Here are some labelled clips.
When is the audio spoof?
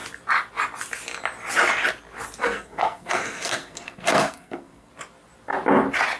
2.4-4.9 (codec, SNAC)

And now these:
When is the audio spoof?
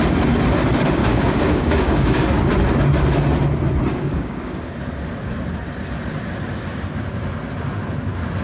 1.0-2.5 (codec, DAC); 3.9-4.6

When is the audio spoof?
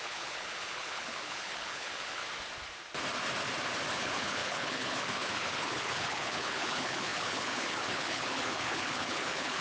0.0-2.2 (codec, HILCodec); 3.9-9.6